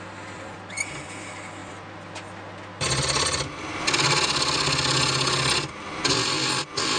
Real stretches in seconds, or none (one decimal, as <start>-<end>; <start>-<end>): 0.0-7.0